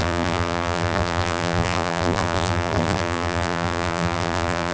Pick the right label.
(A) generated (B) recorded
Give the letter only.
A